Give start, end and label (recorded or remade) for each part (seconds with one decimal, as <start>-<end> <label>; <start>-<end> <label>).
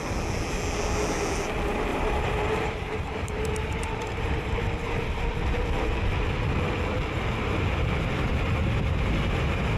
0.0-1.9 recorded; 1.9-5.2 remade; 5.2-9.8 recorded